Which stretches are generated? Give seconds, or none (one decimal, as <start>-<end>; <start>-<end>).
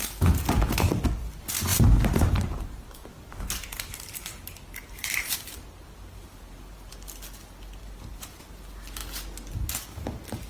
1.7-6.9; 7.8-8.4